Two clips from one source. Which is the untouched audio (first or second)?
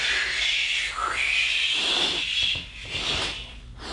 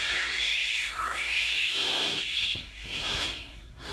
first